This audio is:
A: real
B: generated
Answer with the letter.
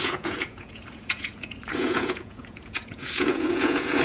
B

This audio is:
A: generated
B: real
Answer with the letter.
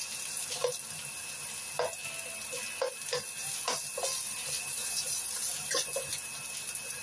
B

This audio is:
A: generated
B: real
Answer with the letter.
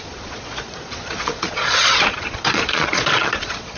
A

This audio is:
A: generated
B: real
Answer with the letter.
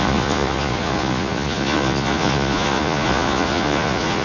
A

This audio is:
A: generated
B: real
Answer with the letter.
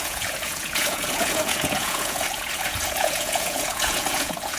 A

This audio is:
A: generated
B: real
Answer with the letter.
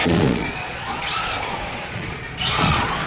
A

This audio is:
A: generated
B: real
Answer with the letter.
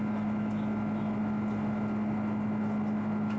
B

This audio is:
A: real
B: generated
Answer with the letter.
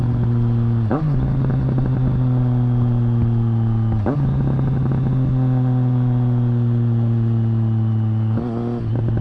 A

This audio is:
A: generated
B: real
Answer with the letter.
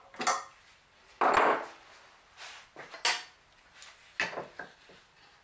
B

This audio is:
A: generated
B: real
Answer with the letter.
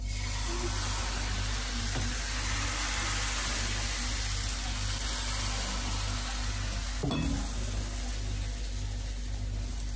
B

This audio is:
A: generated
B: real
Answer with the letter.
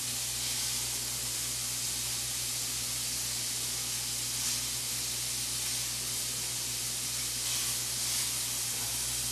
B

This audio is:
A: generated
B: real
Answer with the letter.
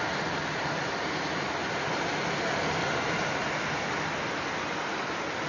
B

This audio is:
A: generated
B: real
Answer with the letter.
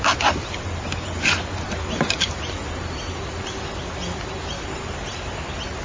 B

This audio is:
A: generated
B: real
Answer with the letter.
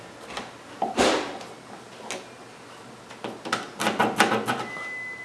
B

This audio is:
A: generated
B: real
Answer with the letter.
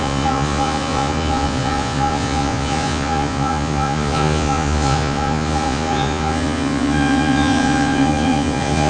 A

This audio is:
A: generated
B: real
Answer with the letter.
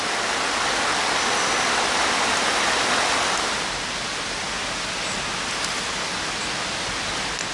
B